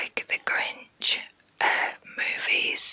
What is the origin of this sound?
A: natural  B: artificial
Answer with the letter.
A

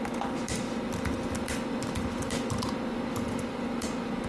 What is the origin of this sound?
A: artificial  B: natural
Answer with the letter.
B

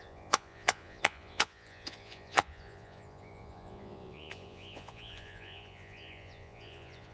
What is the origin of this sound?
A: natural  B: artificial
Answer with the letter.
B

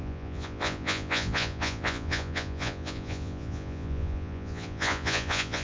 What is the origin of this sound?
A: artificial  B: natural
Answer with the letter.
A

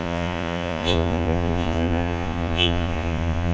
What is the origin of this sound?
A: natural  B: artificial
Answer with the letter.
B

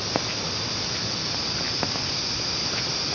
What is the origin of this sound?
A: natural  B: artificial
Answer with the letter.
A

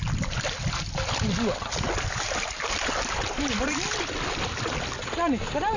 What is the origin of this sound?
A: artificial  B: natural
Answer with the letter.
B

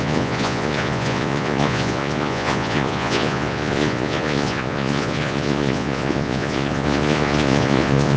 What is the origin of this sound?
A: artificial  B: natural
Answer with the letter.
A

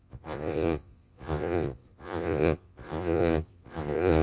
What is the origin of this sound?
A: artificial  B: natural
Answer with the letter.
A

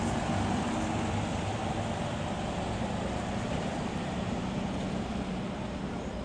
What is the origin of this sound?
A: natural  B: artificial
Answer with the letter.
A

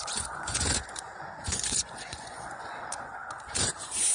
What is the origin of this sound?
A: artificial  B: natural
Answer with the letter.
A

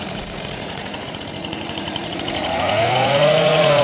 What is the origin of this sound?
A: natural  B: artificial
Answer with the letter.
B